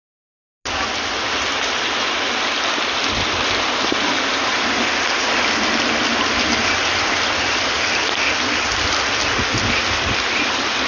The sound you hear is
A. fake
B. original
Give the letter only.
B